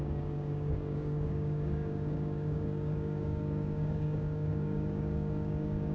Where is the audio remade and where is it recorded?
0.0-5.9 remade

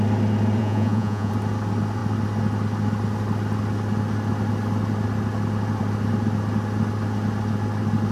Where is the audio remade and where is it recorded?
0.0-0.6 recorded; 0.6-1.3 remade; 1.3-8.1 recorded